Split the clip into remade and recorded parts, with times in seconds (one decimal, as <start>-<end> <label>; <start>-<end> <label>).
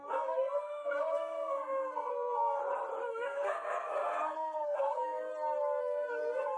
0.0-2.6 remade; 2.6-3.1 recorded; 3.1-5.3 remade; 5.3-5.8 recorded; 5.8-6.6 remade